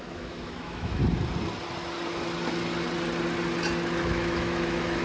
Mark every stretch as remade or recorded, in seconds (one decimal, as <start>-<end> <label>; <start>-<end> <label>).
0.0-1.0 remade; 1.0-4.0 recorded; 4.0-5.0 remade